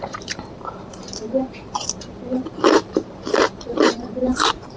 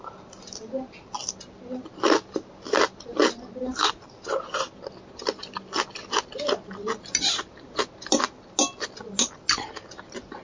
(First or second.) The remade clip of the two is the first